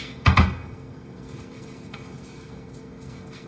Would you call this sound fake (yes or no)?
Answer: yes